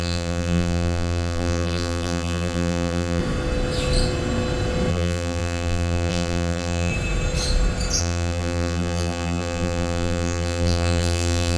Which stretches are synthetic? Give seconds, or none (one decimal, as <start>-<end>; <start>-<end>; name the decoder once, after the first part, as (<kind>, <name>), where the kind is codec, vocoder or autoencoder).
0.0-3.2 (vocoder, BigVGAN v2); 4.9-6.9; 8.0-11.6